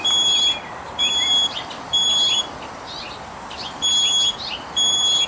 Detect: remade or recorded remade